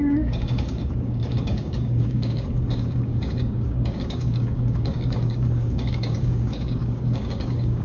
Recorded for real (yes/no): no